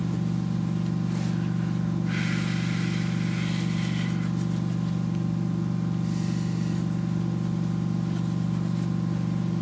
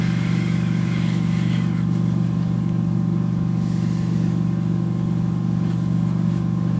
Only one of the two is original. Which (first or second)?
first